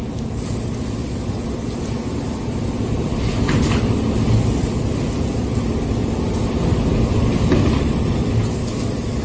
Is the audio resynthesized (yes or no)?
no